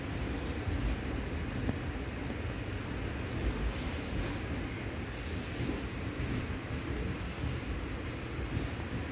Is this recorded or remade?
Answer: recorded